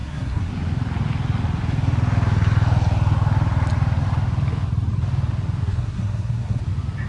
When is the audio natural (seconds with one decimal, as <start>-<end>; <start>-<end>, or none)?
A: 0.5-5.6; 6.6-7.1